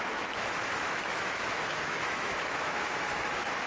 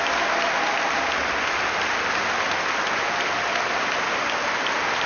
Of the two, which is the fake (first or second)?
first